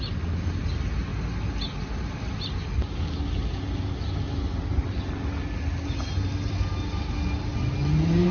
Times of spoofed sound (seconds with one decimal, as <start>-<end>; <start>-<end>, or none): none